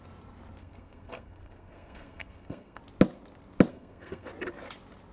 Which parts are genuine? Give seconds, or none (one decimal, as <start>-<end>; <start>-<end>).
0.0-0.6; 2.8-3.7; 4.3-5.1